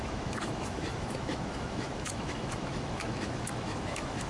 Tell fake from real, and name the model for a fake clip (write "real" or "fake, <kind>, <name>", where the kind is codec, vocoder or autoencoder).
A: fake, autoencoder, DAC-VAE